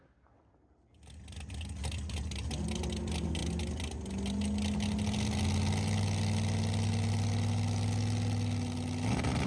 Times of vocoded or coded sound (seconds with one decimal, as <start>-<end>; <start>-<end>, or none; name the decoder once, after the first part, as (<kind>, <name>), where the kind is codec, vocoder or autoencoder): none